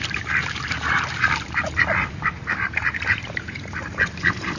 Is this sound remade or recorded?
remade